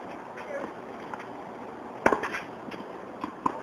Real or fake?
real